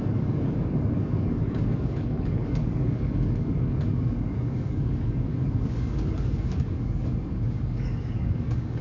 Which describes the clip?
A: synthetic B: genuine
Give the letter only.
A